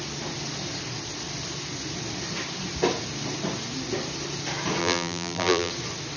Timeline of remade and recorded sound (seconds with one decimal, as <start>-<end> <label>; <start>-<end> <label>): 0.0-4.8 recorded; 4.8-5.7 remade; 5.7-6.2 recorded

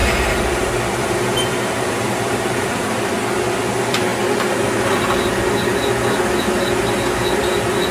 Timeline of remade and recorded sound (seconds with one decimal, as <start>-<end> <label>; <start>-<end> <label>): 0.0-3.0 remade; 3.0-7.9 recorded

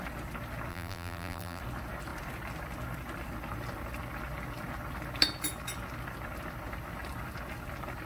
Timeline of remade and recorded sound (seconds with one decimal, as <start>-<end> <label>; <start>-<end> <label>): 0.0-0.7 recorded; 0.7-1.6 remade; 1.6-8.1 recorded

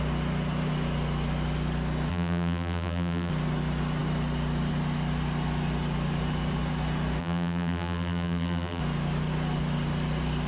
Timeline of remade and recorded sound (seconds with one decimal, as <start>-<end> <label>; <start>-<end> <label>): 0.0-2.1 recorded; 2.1-3.3 remade; 3.3-7.2 recorded; 7.2-8.8 remade; 8.8-10.5 recorded

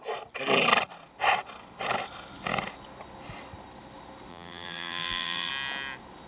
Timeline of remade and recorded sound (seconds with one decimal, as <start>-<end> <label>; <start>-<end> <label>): 0.0-4.3 recorded; 4.3-5.5 remade; 5.5-6.3 recorded

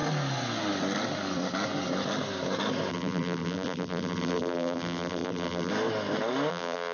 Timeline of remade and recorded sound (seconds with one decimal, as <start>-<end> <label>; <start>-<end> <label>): 0.0-2.9 recorded; 2.9-5.7 remade; 5.7-6.5 recorded; 6.5-6.9 remade

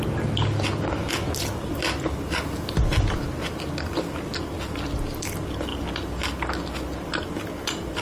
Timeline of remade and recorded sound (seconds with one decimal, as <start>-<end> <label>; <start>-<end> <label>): 0.0-8.0 recorded

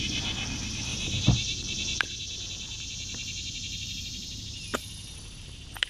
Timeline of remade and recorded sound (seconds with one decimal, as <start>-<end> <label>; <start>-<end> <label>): 0.0-5.9 remade